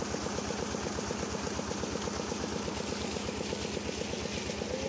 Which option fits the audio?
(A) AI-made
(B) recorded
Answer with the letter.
B